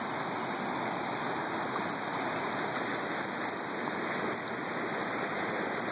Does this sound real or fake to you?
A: real